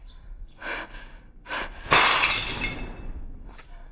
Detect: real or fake real